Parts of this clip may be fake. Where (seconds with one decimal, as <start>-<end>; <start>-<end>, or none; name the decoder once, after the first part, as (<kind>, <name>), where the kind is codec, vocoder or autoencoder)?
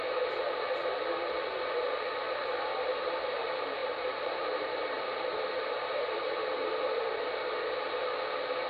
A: 3.8-7.0 (vocoder, BigVGAN v2)